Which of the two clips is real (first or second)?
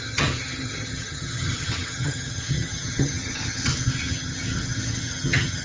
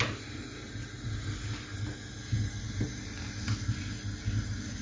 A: second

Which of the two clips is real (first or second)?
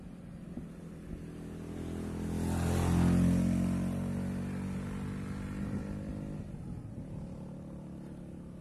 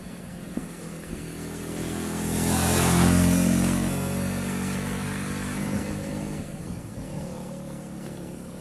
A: first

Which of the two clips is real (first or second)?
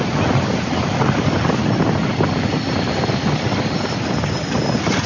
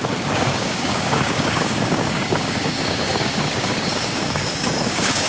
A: first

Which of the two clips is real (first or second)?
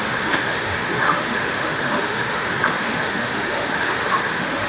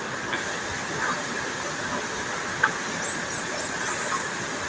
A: second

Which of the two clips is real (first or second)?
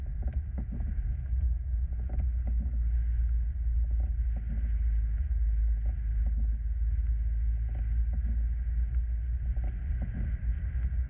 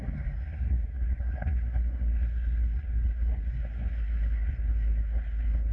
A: first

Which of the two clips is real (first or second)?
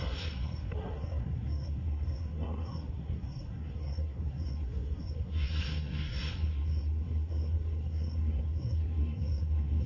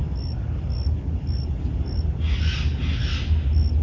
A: second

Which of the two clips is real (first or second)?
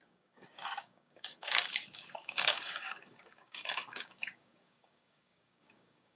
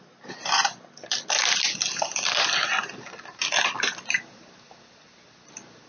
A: second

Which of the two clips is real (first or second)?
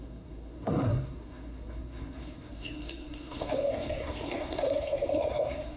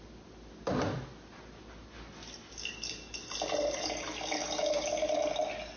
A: second